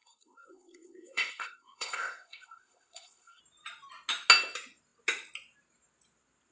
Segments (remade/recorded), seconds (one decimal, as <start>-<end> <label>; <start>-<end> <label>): 0.0-3.4 remade; 3.4-6.5 recorded